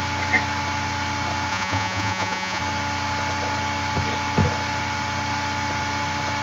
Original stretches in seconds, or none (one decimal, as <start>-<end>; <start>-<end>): 0.0-1.5; 2.6-6.4